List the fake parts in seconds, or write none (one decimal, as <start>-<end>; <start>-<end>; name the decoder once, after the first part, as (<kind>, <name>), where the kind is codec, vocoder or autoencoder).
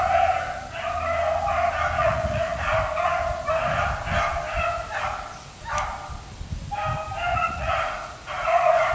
2.0-2.8 (vocoder, Vocos); 7.3-8.9